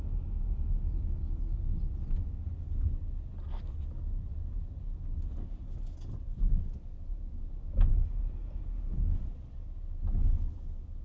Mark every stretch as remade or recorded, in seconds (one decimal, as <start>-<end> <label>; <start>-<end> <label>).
0.0-11.0 recorded